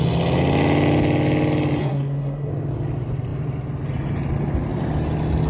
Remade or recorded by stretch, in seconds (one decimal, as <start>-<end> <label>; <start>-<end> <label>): 0.0-1.8 recorded; 1.8-2.5 remade; 2.5-5.5 recorded